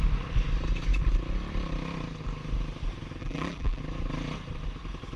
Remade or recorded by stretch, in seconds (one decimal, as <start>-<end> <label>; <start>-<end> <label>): 0.0-3.2 recorded; 3.2-3.8 remade; 3.8-5.2 recorded